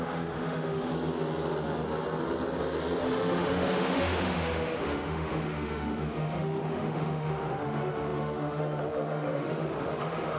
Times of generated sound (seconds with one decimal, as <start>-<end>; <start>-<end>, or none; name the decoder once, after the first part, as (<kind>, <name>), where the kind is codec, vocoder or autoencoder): 0.0-0.9 (autoencoder, DAC-VAE); 3.0-10.4